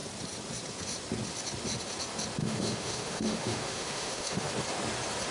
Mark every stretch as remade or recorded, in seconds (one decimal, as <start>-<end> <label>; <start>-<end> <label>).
0.0-2.4 recorded; 2.4-4.5 remade; 4.5-5.3 recorded